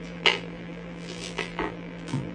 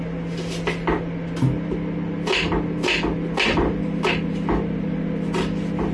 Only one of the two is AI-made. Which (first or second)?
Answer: first